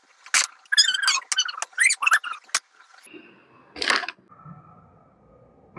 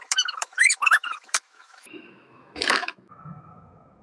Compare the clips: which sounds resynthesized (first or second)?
second